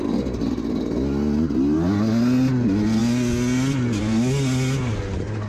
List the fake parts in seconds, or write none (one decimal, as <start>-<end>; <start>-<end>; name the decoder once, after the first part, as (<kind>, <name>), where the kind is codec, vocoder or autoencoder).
none